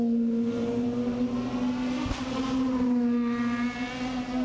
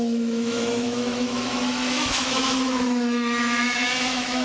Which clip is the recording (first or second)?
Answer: first